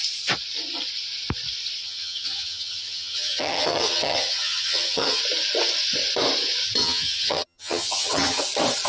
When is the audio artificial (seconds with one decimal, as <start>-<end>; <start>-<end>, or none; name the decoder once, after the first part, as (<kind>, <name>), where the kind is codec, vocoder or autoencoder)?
1.8-5.2 (vocoder, HiFi-GAN); 6.8-8.4